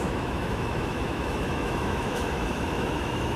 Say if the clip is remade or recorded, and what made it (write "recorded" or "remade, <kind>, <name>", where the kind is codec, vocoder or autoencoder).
remade, autoencoder, DAC-VAE